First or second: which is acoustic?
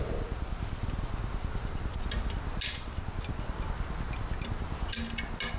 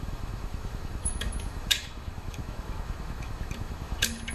first